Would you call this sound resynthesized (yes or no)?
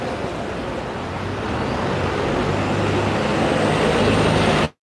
no